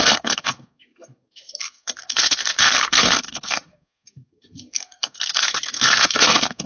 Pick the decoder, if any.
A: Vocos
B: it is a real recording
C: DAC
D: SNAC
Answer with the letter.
D